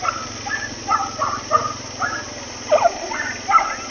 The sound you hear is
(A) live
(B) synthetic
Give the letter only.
A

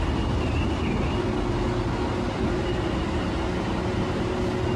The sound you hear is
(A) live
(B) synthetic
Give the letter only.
A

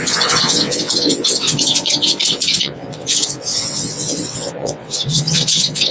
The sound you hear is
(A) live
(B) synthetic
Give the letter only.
B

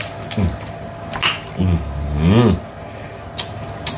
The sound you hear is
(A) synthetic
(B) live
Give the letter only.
B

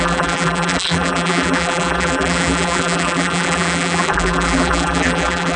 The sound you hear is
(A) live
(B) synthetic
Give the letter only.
B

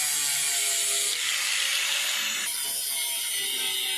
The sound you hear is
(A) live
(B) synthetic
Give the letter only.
A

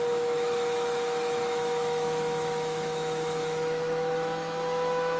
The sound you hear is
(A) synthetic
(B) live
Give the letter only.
A